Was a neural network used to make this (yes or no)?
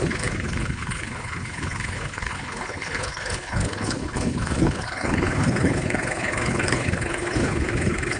yes